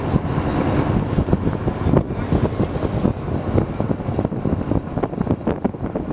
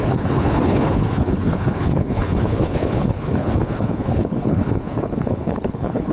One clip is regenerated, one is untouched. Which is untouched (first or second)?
first